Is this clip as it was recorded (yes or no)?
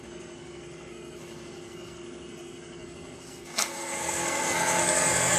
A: no